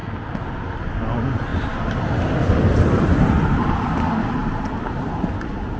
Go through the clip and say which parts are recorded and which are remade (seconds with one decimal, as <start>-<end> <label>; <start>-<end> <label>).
0.0-1.5 recorded; 1.5-2.2 remade; 2.2-2.7 recorded; 2.7-3.6 remade; 3.6-4.4 recorded; 4.4-5.2 remade; 5.2-5.8 recorded